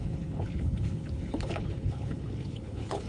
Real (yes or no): no